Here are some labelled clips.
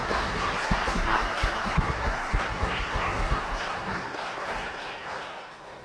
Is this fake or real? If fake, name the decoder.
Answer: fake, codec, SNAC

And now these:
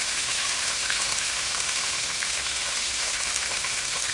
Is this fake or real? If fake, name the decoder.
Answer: fake, autoencoder, DAC-VAE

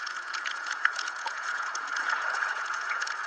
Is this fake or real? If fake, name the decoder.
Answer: fake, vocoder, Vocos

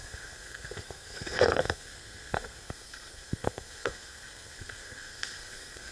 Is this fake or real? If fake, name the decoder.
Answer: fake, codec, SNAC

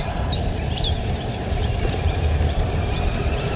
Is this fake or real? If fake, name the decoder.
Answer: fake, vocoder, BigVGAN v2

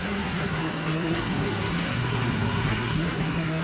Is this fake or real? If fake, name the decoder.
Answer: fake, codec, SNAC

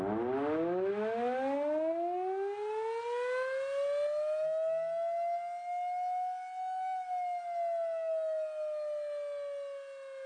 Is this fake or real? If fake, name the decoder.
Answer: real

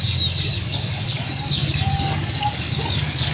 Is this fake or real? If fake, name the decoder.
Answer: fake, codec, DAC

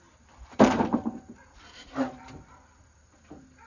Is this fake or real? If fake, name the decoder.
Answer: fake, vocoder, BigVGAN v2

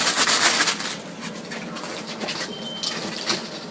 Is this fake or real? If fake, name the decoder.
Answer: real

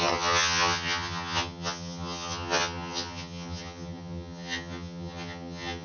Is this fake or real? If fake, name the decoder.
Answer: fake, vocoder, HiFi-GAN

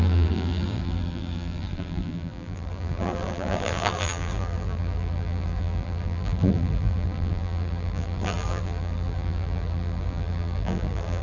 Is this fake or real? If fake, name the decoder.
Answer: fake, vocoder, BigVGAN v2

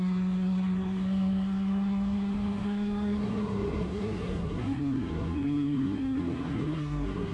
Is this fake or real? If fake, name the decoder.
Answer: fake, codec, SNAC